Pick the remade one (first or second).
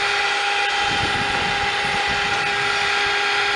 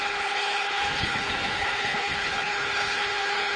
second